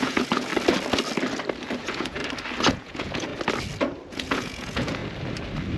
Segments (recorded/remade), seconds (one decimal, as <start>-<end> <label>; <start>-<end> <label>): 0.0-0.5 remade; 0.5-1.8 recorded; 1.8-2.2 remade; 2.2-2.7 recorded; 2.7-3.3 remade; 3.3-4.1 recorded; 4.1-5.0 remade; 5.0-5.8 recorded